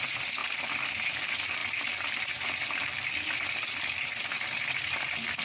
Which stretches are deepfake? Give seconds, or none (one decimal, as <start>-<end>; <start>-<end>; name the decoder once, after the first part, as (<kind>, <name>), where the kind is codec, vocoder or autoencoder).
none